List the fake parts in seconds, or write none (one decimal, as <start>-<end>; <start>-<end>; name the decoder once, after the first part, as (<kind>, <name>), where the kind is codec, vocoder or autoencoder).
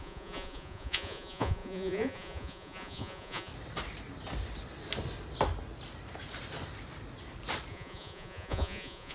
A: 0.0-3.5 (vocoder, Vocos); 7.7-9.1